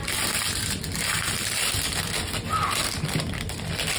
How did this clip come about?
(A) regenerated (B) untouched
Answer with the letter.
B